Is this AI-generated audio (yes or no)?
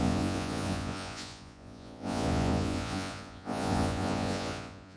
yes